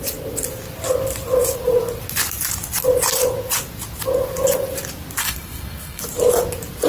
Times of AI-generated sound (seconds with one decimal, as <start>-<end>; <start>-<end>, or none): 5.2-6.0